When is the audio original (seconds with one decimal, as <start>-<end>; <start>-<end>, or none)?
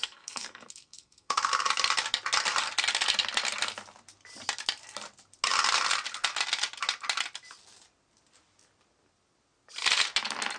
1.5-10.6